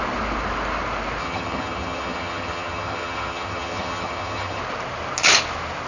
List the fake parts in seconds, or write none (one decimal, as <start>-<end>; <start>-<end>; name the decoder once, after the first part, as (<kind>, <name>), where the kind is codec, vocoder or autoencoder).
1.2-4.6 (vocoder, HiFi-GAN)